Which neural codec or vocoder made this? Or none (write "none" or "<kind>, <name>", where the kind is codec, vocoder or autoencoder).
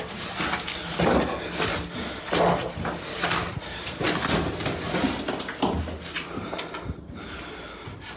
none